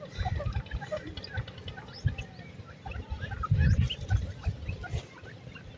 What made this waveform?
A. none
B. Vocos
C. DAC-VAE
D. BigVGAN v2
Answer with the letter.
A